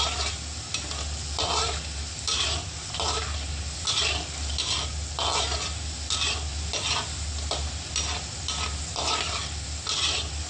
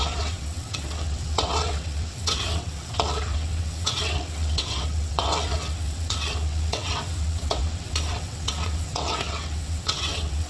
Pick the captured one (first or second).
first